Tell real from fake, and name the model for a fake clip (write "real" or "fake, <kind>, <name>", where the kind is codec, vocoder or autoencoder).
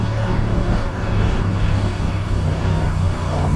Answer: fake, codec, DAC